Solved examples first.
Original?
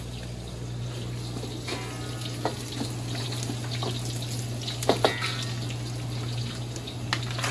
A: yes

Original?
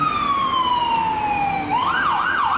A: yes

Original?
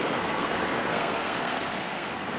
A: no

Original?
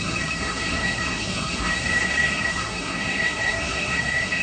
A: no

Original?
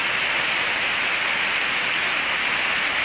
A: yes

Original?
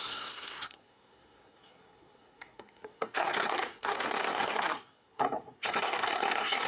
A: no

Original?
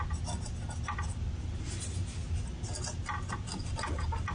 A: yes